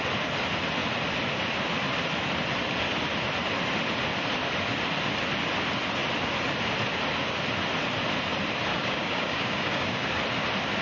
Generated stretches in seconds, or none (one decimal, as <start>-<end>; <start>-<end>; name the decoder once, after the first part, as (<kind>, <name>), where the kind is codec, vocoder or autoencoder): 8.7-10.1 (codec, DAC)